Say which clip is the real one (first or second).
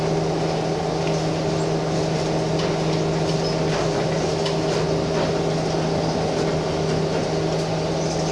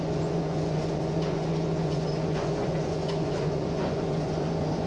first